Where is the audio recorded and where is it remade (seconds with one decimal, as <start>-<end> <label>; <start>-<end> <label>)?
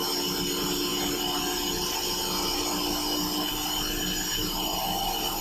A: 0.0-5.4 recorded